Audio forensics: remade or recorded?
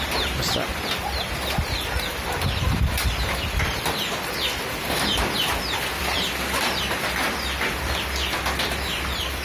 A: remade